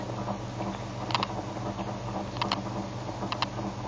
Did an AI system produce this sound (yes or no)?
no